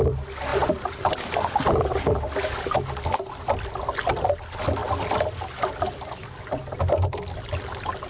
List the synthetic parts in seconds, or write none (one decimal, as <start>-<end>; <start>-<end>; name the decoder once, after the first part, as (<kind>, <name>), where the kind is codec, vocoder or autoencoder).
0.5-1.1 (vocoder, BigVGAN v2)

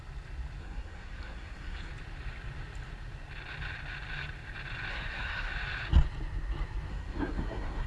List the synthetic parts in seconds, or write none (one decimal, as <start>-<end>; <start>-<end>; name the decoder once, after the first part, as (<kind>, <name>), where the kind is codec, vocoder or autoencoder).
0.6-1.9 (codec, SNAC); 4.9-5.5; 6.9-7.9